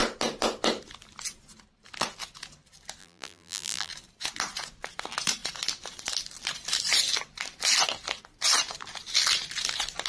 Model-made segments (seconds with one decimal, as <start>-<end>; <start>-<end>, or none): 3.0-3.9